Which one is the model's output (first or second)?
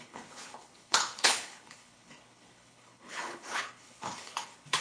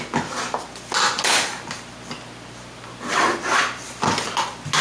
first